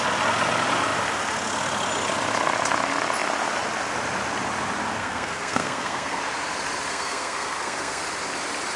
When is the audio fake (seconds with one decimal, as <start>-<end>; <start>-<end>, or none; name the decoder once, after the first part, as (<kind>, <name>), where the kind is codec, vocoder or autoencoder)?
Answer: 5.0-6.2 (codec, SNAC); 6.9-8.0